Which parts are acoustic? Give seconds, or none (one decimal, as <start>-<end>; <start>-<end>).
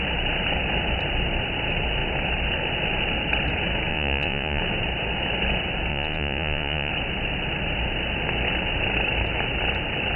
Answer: 0.0-3.9; 4.6-5.9; 6.9-10.2